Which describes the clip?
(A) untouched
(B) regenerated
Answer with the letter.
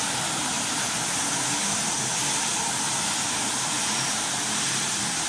B